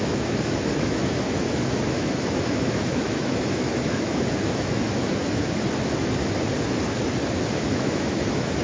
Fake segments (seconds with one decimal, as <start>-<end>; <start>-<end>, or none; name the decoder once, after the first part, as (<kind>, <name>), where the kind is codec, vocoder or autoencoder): 0.0-5.2 (autoencoder, DAC-VAE); 7.6-8.6